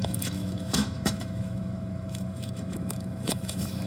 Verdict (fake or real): fake